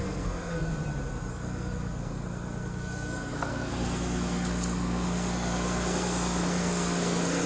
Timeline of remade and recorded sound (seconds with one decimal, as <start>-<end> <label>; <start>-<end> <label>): 0.0-0.7 remade; 0.7-1.3 recorded; 1.3-7.5 remade